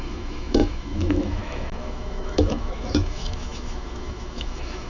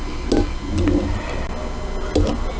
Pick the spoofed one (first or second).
first